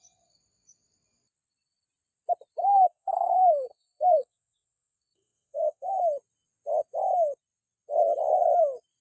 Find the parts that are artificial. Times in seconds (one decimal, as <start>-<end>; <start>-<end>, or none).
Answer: 2.6-6.0